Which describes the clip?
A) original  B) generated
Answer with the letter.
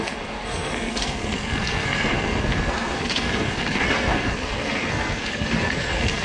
B